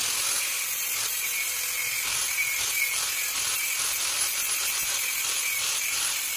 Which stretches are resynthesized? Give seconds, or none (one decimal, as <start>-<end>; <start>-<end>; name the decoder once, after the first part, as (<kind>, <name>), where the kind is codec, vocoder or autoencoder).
0.0-6.4 (vocoder, BigVGAN v2)